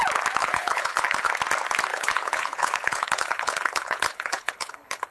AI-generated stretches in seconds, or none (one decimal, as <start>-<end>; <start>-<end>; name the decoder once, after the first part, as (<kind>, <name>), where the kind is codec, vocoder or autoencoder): 0.4-1.3 (codec, HILCodec); 1.9-5.1